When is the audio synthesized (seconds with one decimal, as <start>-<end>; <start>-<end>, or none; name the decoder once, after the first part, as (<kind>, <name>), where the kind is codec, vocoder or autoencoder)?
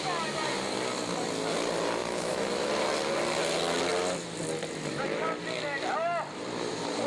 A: 2.0-2.7 (autoencoder, DAC-VAE)